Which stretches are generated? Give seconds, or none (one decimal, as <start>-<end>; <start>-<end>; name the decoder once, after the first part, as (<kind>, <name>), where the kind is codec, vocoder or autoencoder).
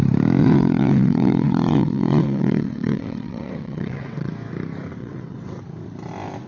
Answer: 0.4-4.3 (vocoder, WaveNeXt); 5.0-5.6